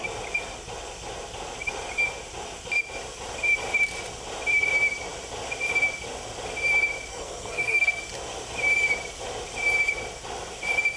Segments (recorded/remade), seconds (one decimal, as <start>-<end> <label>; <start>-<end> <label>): 0.0-7.1 recorded; 7.1-8.0 remade; 8.0-11.0 recorded